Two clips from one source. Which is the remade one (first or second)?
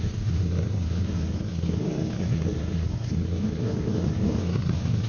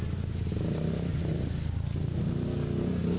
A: first